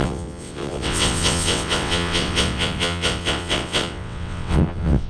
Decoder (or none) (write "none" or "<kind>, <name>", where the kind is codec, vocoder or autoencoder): vocoder, WaveNeXt